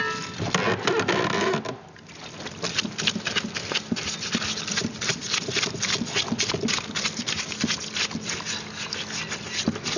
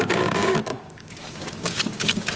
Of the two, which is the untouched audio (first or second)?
first